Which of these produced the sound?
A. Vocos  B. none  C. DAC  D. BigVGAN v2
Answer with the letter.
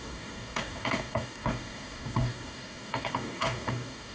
C